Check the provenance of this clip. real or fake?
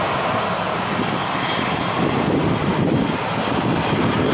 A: real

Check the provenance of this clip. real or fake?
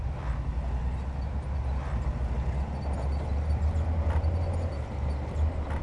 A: real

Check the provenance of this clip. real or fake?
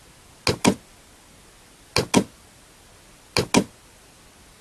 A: real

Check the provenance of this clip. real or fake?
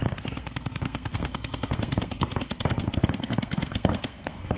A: fake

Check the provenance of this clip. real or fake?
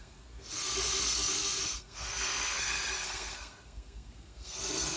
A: fake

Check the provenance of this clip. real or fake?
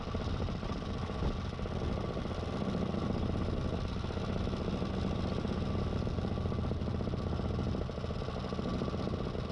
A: real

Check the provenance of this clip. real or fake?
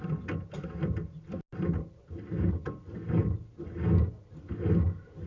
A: real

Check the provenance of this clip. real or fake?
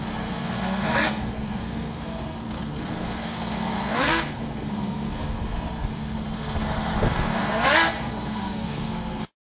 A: fake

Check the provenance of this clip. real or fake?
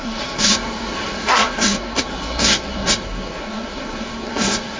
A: fake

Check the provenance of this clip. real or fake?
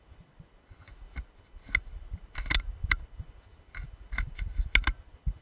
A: real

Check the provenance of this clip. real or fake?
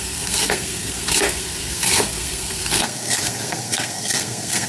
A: fake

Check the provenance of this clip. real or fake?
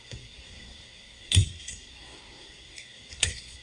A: fake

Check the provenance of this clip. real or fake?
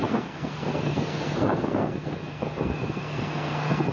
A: fake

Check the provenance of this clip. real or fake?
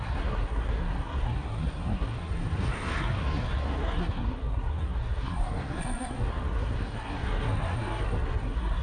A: fake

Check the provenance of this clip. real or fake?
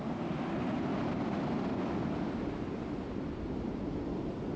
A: real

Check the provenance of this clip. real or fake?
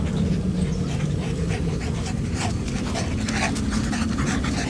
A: real